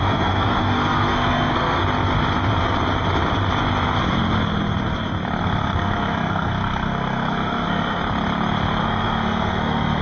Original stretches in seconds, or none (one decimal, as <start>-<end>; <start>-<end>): 1.8-5.4; 8.0-8.8